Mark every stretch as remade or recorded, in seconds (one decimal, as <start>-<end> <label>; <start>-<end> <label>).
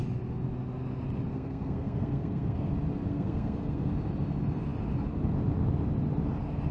0.0-1.3 recorded; 1.3-2.7 remade; 2.7-3.1 recorded; 3.1-3.9 remade; 3.9-6.7 recorded